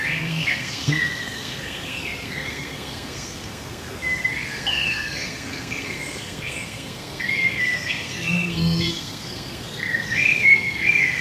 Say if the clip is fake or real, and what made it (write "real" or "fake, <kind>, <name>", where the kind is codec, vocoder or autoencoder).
fake, codec, SNAC